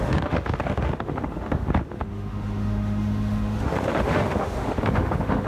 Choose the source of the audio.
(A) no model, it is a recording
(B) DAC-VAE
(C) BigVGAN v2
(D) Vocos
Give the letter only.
B